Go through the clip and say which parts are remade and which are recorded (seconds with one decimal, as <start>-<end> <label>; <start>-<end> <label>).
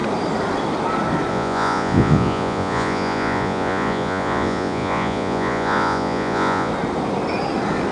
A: 0.0-1.3 recorded; 1.3-6.7 remade; 6.7-7.9 recorded